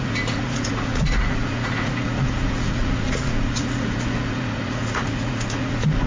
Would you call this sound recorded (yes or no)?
no